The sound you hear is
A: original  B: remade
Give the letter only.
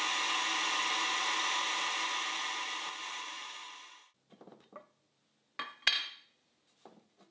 A